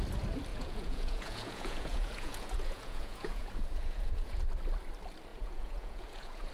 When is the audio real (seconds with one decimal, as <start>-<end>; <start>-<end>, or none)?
0.0-0.5; 4.4-5.3